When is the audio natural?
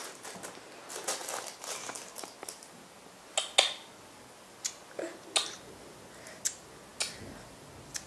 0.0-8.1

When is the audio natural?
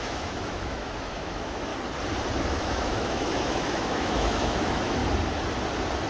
1.7-2.5; 5.0-6.1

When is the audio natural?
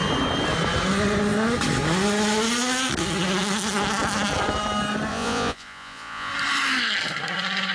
0.0-5.1; 6.3-7.7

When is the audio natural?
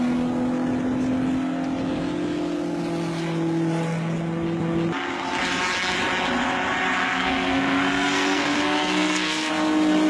0.0-7.0; 9.5-10.1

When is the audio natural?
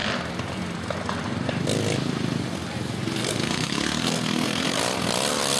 0.0-3.2; 4.8-5.6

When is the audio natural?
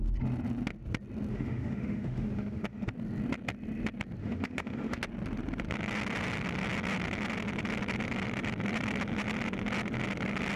0.0-1.3; 2.9-4.2; 5.0-10.6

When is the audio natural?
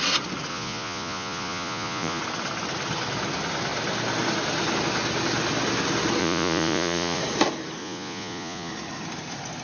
0.0-0.5; 2.2-6.2; 7.2-7.8; 8.7-9.6